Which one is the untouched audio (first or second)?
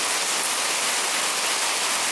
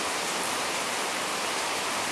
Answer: first